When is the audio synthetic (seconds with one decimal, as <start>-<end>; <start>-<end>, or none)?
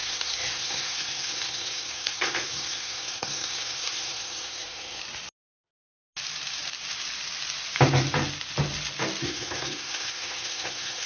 0.0-5.0; 9.2-11.1